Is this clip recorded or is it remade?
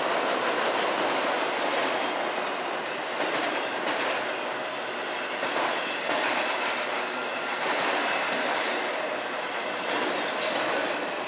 recorded